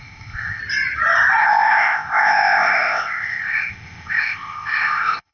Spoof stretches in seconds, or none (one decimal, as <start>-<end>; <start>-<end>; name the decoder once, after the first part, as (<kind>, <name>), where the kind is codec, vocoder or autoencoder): 0.0-0.6 (codec, ZipCodec); 1.4-5.3